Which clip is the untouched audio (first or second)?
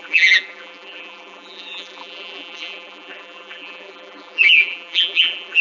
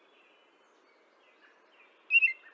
second